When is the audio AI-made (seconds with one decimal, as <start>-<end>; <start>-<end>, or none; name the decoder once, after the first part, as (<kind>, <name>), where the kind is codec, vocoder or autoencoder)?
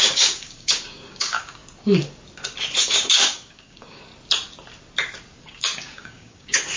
0.0-1.6 (codec, DAC); 2.8-4.1; 5.4-6.8